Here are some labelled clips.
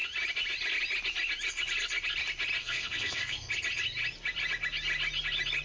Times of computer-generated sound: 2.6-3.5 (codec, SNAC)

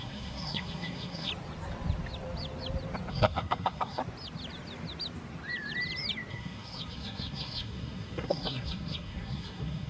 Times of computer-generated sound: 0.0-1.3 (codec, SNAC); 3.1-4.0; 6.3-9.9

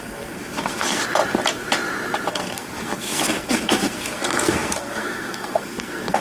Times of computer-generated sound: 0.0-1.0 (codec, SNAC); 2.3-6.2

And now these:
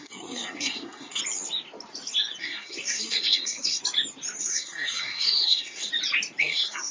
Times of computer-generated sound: 0.0-1.2 (codec, SNAC); 2.4-3.8; 4.4-5.9; 6.4-6.9